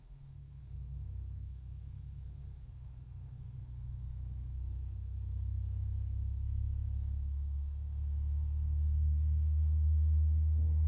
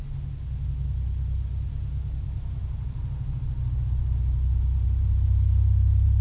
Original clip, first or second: second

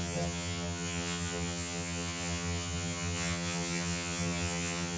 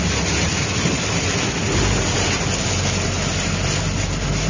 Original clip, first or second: second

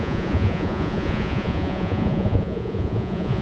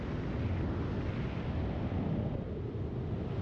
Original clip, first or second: second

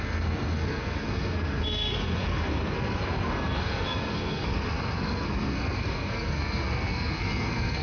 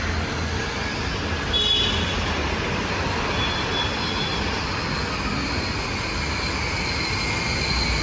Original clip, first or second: second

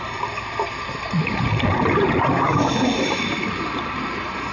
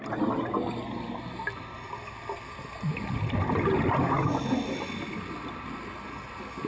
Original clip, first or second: second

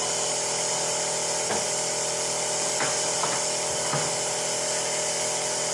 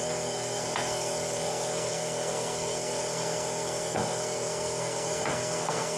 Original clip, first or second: first